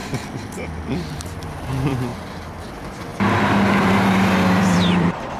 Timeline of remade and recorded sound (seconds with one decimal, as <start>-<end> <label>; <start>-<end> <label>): 0.0-1.1 recorded; 1.1-2.1 remade; 2.1-2.7 recorded; 2.7-3.1 remade; 3.1-4.6 recorded; 4.6-5.4 remade